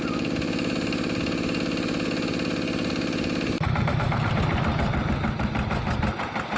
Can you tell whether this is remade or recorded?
recorded